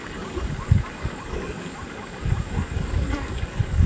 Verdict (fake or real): fake